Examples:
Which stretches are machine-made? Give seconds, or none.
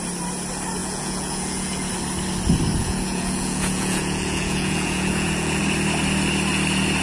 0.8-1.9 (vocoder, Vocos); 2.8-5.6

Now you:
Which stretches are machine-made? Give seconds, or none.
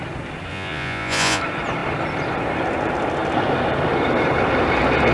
0.5-1.4 (vocoder, Vocos)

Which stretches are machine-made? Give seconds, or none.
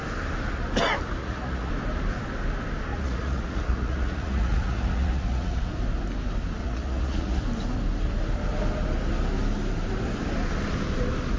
1.2-1.7 (vocoder, Vocos); 2.9-5.6; 6.6-7.4